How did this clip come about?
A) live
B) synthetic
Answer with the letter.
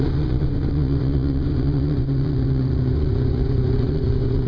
B